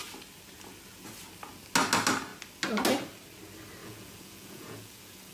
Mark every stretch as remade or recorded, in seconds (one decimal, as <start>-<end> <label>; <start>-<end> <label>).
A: 0.0-3.8 recorded; 3.8-5.3 remade